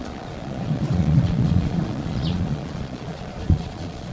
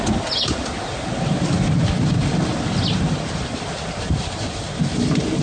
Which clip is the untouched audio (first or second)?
second